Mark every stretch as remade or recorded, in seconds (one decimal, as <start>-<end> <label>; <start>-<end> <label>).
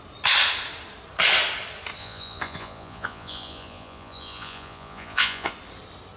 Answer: 0.0-2.0 recorded; 2.0-5.5 remade; 5.5-6.2 recorded